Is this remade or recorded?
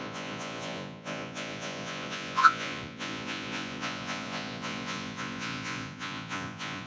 remade